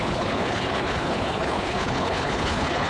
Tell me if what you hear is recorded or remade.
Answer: remade